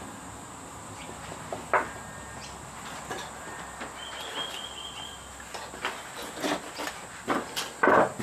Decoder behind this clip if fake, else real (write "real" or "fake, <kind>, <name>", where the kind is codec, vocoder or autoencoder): real